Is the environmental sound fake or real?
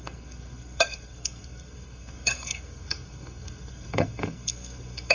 fake